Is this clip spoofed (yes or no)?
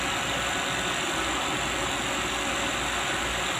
no